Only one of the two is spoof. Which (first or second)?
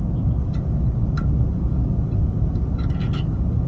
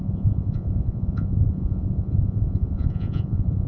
second